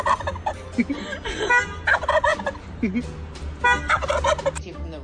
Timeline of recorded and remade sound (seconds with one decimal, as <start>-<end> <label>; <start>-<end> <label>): 0.0-5.0 recorded